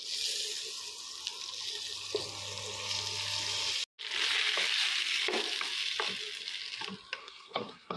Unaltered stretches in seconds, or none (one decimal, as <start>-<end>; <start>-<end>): 0.0-7.2